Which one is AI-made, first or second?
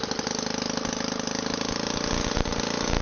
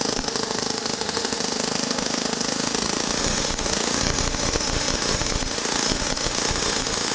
second